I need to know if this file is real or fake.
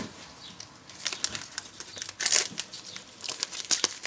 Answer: real